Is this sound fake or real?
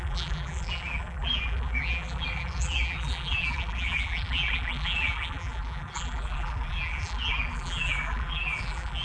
fake